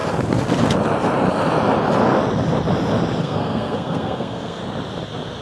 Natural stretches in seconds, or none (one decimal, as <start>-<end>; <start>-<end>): 0.0-3.2; 4.6-5.4